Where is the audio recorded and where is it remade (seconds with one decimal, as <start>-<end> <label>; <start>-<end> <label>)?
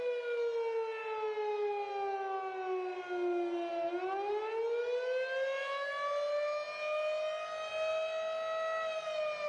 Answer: 0.0-9.5 recorded